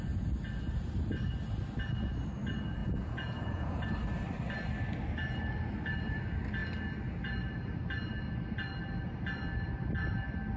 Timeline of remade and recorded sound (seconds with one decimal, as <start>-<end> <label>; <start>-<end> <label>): 0.0-2.8 recorded; 2.8-3.8 remade; 3.8-10.6 recorded